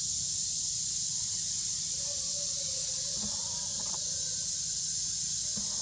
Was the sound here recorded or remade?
recorded